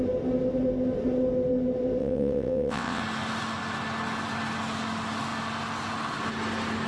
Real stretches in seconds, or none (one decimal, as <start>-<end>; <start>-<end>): 0.0-2.0; 3.0-6.9